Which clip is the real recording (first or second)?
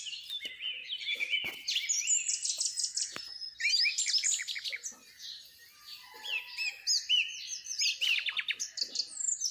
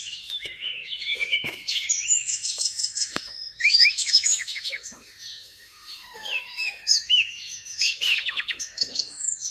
first